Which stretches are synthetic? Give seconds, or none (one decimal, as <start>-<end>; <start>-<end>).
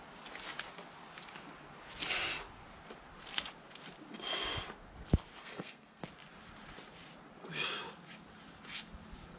5.4-6.0